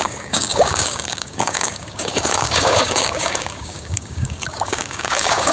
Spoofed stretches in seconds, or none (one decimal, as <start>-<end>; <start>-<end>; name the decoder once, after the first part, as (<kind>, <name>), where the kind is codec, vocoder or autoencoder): 0.0-5.5 (codec, DAC)